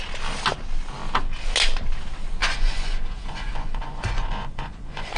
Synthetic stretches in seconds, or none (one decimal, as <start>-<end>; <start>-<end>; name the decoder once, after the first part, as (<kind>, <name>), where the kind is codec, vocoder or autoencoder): 2.4-5.2 (vocoder, Vocos)